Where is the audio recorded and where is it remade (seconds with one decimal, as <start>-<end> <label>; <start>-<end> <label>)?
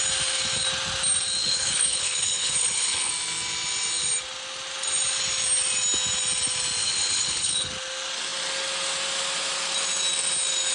0.0-1.4 recorded; 1.4-3.1 remade; 3.1-6.8 recorded; 6.8-7.7 remade; 7.7-10.7 recorded